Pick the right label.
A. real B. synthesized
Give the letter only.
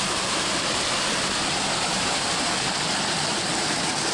A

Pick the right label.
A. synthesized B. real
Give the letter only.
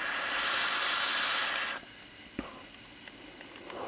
B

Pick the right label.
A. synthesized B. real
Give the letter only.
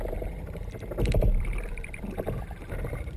A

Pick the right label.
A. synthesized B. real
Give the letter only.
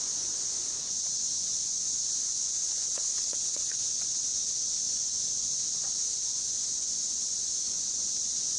A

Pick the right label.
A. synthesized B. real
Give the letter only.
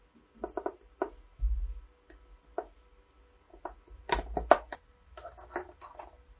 B